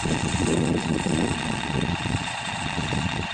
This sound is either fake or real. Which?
fake